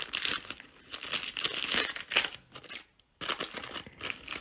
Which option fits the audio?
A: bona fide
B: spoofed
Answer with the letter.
A